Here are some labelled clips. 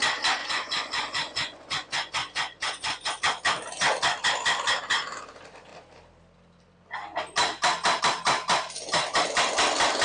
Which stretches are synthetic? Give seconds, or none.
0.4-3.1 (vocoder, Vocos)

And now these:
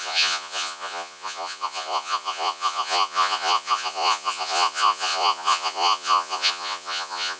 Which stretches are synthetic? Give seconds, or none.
0.0-7.4 (vocoder, Vocos)

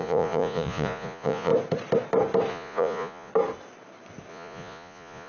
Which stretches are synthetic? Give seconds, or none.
0.0-1.5 (vocoder, Vocos); 2.5-3.3; 4.3-5.3

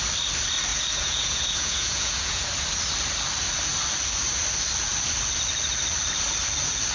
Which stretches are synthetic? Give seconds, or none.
0.7-2.5 (vocoder, Vocos)

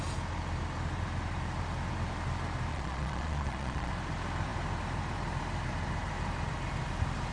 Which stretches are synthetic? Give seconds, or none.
2.7-3.9 (vocoder, Vocos)

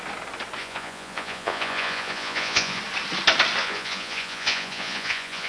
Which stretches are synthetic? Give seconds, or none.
0.6-2.8 (vocoder, Vocos); 3.6-5.5